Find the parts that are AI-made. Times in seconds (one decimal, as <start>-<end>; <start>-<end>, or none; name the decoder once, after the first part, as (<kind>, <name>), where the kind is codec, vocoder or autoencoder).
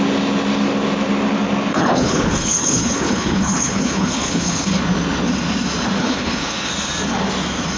1.7-4.8 (codec, HILCodec); 6.0-6.7